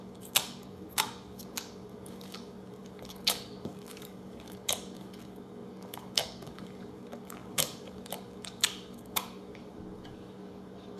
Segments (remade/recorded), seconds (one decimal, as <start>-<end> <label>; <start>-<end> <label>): 0.0-11.0 remade